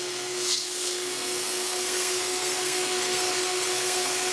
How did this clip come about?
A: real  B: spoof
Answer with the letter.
B